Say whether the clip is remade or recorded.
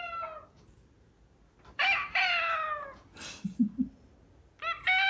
recorded